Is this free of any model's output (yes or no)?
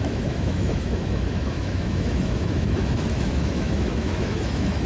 no